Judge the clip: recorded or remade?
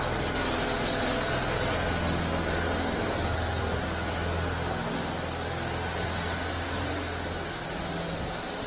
recorded